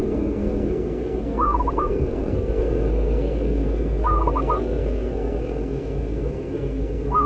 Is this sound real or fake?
fake